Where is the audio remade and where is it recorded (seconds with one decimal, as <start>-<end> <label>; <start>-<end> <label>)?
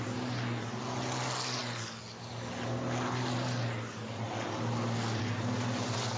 0.0-6.2 recorded